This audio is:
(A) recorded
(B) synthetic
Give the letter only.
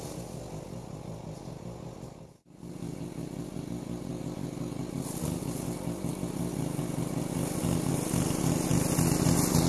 A